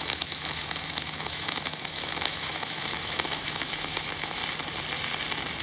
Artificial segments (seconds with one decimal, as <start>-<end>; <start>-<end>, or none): 0.0-4.4